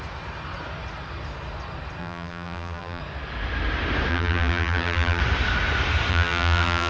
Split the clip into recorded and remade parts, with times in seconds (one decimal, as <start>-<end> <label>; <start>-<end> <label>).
0.0-2.0 recorded; 2.0-3.0 remade; 3.0-4.1 recorded; 4.1-5.2 remade; 5.2-6.1 recorded; 6.1-6.9 remade